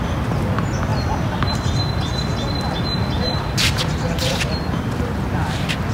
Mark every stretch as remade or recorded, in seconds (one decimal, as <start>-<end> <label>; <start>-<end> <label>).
0.0-5.9 recorded